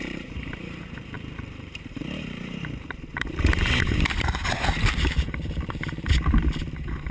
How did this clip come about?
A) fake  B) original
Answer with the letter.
A